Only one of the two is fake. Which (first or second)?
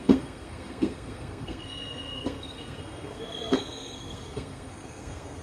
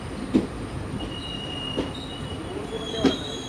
first